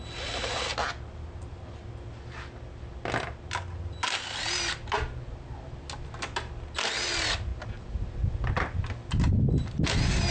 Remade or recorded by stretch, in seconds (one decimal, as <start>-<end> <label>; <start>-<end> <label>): 0.0-7.5 recorded; 7.5-8.0 remade; 8.0-10.3 recorded